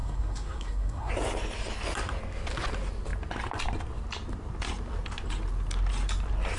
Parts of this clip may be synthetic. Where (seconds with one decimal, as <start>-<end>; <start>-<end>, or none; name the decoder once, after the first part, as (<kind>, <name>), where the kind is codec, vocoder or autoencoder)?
0.0-1.1 (codec, SNAC)